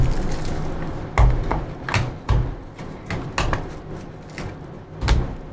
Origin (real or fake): real